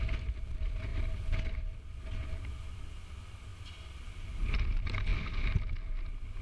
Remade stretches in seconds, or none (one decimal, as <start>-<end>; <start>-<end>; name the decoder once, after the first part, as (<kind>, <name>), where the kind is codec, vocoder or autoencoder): none